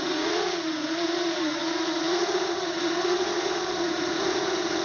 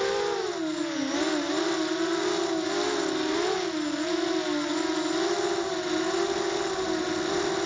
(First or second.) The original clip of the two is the second